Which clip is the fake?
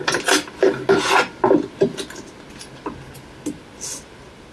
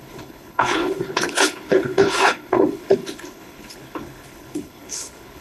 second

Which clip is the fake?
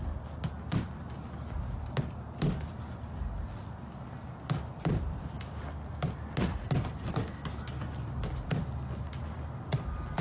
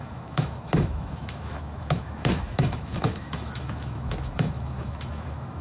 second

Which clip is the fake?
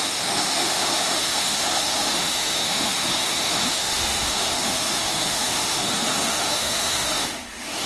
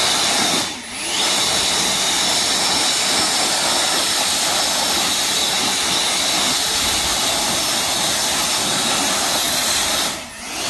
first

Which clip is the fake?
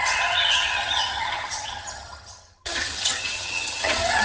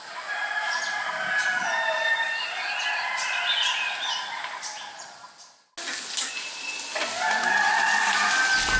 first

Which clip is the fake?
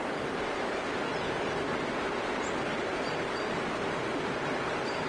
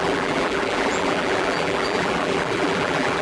second